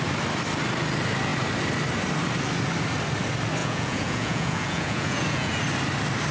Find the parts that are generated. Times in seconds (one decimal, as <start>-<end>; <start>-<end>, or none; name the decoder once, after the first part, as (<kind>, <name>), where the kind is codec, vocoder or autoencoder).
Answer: 3.6-5.6 (vocoder, Vocos)

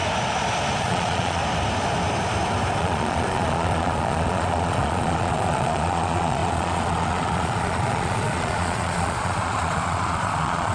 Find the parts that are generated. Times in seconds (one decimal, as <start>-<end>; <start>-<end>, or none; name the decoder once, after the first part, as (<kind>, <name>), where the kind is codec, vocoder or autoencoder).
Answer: 0.8-1.4 (vocoder, Vocos); 2.8-10.7

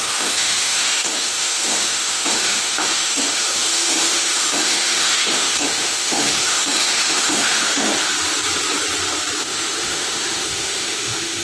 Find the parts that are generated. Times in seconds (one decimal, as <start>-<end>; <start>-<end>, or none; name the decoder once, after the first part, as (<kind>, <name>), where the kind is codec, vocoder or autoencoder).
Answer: 0.0-7.9 (autoencoder, DAC-VAE); 9.4-11.4

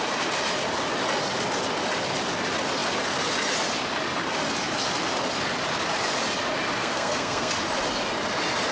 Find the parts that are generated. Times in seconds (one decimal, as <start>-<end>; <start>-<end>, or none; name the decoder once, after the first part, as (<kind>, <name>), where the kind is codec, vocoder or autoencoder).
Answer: 6.8-7.5 (codec, SNAC)

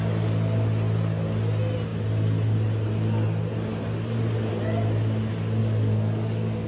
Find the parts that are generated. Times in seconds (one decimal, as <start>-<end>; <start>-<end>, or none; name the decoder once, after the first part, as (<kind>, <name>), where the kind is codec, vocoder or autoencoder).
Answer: 5.6-6.7 (codec, DAC)

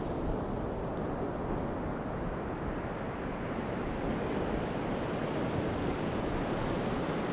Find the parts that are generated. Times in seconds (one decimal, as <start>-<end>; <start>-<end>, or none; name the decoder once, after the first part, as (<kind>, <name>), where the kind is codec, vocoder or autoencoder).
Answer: none

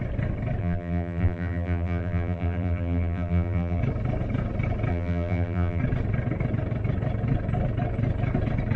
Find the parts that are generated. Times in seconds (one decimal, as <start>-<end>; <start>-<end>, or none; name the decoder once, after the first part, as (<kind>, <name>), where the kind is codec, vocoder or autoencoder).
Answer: 0.6-3.8 (vocoder, BigVGAN v2); 4.9-5.8

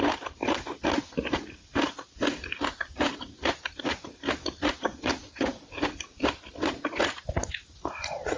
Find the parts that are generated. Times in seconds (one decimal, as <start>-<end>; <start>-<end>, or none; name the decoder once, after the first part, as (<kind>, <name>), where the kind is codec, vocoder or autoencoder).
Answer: none